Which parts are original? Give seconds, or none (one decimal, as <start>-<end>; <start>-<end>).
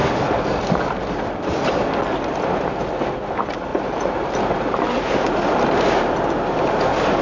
0.0-3.7; 6.8-7.2